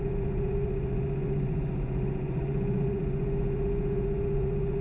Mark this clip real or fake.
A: fake